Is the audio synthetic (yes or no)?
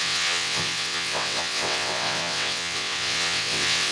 yes